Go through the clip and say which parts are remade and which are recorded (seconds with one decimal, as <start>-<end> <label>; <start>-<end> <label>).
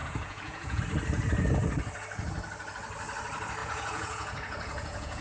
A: 0.0-0.8 remade; 0.8-3.6 recorded; 3.6-5.2 remade